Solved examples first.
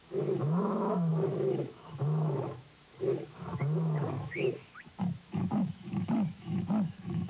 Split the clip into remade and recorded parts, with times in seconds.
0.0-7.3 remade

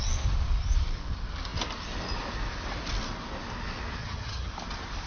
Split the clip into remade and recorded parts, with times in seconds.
0.0-4.0 recorded; 4.0-4.5 remade; 4.5-5.1 recorded

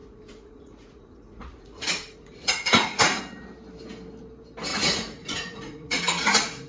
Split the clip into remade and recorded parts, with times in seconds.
0.0-3.2 remade; 3.2-4.7 recorded; 4.7-6.7 remade

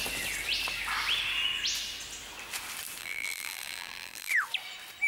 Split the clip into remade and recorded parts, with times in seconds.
0.0-3.0 recorded; 3.0-4.3 remade; 4.3-5.1 recorded

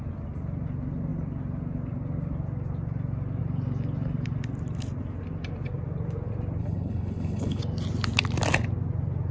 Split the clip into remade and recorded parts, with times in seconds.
0.0-6.6 recorded; 6.6-7.6 remade; 7.6-9.3 recorded

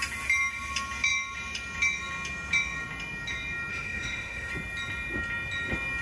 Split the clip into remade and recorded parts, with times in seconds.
0.0-3.7 recorded; 3.7-4.5 remade; 4.5-6.0 recorded

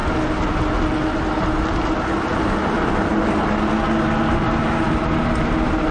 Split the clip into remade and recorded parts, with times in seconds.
0.0-5.9 recorded